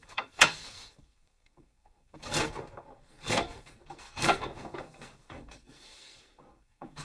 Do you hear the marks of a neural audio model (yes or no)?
yes